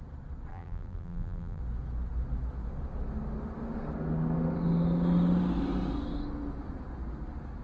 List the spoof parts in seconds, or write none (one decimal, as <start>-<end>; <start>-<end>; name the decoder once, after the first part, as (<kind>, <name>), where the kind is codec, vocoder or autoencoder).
0.5-1.6 (vocoder, BigVGAN v2)